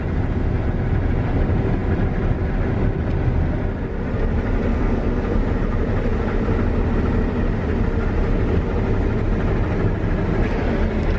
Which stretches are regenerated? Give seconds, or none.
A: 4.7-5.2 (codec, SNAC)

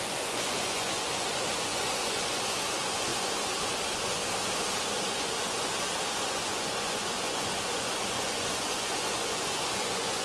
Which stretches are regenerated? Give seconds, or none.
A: 0.0-4.2 (vocoder, Vocos); 4.8-10.2

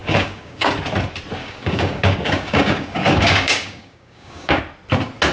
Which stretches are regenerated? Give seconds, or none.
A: 0.0-0.7 (codec, DAC); 1.4-4.6

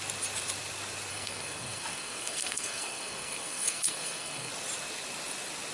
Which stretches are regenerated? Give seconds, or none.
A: 1.1-4.5 (codec, SNAC)

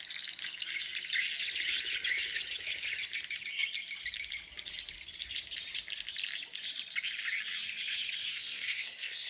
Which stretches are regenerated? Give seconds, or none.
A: 8.3-9.3 (codec, SNAC)